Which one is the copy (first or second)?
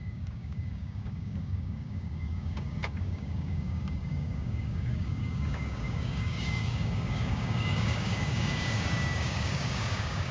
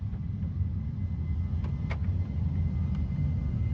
first